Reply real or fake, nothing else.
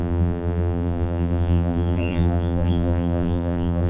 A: fake